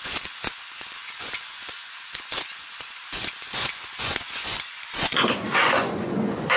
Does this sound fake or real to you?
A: fake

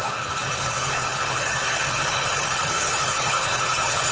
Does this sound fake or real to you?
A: fake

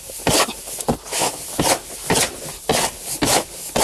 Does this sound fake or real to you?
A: real